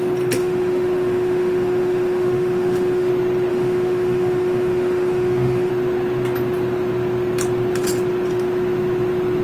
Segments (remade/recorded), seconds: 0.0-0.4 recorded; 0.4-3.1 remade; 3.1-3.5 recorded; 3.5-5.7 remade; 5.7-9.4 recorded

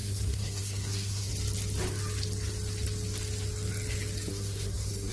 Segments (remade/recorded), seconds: 0.0-1.3 remade; 1.3-4.3 recorded; 4.3-5.1 remade

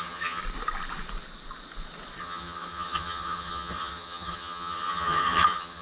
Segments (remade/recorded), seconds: 0.0-0.4 remade; 0.4-2.2 recorded; 2.2-5.8 remade

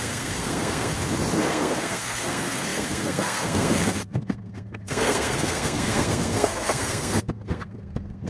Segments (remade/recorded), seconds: 0.0-0.9 remade; 0.9-1.5 recorded; 1.5-8.3 remade

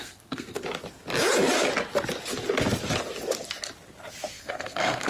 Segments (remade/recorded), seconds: 0.0-0.6 remade; 0.6-4.3 recorded; 4.3-5.1 remade

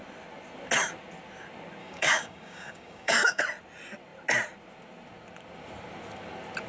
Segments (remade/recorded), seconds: 0.0-1.8 recorded; 1.8-3.4 remade; 3.4-6.7 recorded